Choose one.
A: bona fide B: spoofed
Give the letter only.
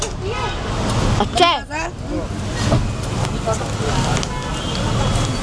A